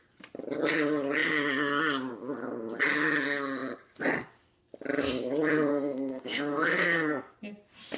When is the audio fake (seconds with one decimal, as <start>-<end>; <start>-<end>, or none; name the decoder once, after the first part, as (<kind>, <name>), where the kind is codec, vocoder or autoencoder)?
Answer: 5.7-7.3 (codec, SNAC)